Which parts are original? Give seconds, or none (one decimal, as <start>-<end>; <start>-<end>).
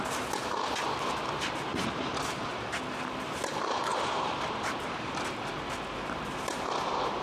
0.0-1.7; 2.7-3.9; 5.1-7.2